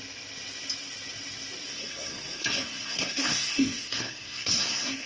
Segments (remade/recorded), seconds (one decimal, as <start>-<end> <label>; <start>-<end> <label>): 0.0-1.7 recorded; 1.7-5.1 remade